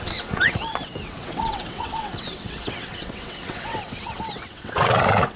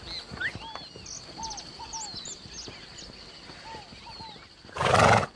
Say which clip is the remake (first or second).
first